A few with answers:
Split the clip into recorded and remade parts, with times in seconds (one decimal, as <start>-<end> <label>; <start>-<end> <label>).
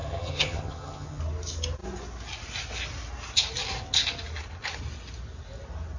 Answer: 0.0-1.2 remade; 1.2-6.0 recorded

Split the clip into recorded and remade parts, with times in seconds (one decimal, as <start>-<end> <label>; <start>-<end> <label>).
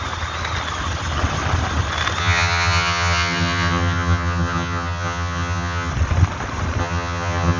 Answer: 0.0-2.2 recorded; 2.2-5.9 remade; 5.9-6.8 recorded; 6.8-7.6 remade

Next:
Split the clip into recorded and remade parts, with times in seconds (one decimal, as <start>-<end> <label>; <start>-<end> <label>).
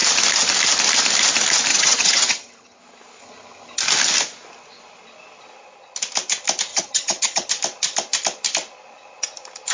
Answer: 0.0-1.7 recorded; 1.7-2.8 remade; 2.8-3.2 recorded; 3.2-3.8 remade; 3.8-6.7 recorded; 6.7-7.5 remade; 7.5-9.7 recorded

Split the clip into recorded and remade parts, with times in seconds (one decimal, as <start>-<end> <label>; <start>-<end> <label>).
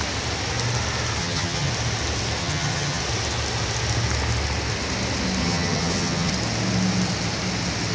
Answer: 0.0-1.2 recorded; 1.2-1.7 remade; 1.7-2.4 recorded; 2.4-3.0 remade; 3.0-5.4 recorded; 5.4-6.3 remade; 6.3-7.9 recorded